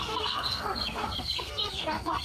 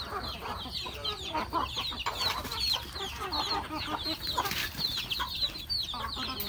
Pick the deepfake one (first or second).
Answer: first